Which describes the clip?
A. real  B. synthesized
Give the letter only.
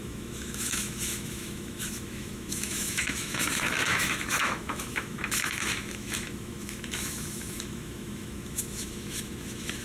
B